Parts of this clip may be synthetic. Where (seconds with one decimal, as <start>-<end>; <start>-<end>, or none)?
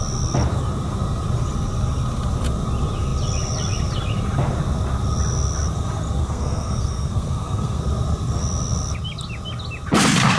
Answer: 6.2-7.8